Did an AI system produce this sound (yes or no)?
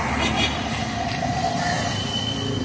no